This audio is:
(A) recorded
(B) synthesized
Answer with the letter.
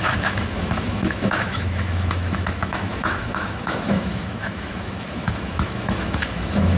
B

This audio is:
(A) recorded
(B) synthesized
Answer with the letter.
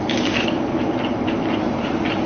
A